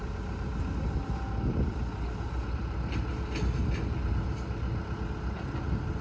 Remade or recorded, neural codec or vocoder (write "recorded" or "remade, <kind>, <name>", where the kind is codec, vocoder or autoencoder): recorded